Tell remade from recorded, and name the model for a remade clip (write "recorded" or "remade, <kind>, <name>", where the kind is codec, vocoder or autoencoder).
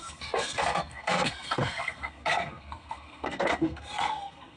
remade, codec, SNAC